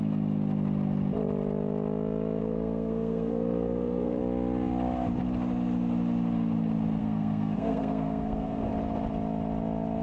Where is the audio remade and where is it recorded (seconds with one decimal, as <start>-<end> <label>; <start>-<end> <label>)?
0.0-2.4 recorded; 2.4-4.2 remade; 4.2-7.0 recorded; 7.0-8.7 remade; 8.7-10.0 recorded